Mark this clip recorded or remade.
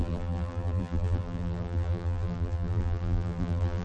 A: remade